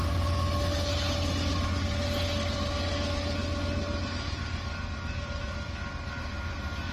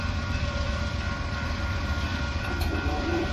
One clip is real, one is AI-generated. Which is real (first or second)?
first